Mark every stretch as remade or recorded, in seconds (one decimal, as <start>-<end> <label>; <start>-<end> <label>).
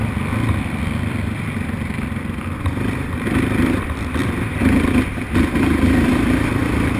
0.0-0.6 recorded; 0.6-7.0 remade